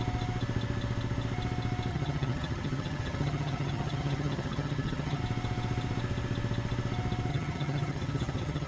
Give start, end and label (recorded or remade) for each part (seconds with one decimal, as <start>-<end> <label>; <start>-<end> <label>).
0.0-1.9 recorded; 1.9-5.2 remade; 5.2-7.3 recorded; 7.3-8.7 remade